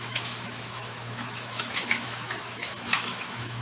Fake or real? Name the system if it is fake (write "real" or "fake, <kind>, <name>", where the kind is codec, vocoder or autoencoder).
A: fake, autoencoder, DAC-VAE